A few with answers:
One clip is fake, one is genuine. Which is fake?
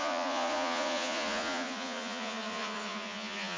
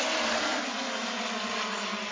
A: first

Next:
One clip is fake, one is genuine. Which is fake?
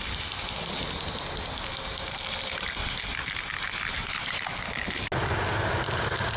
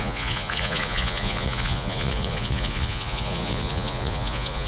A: second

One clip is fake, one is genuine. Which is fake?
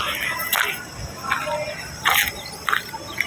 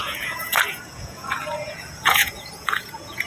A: second